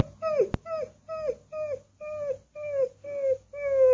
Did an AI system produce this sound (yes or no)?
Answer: no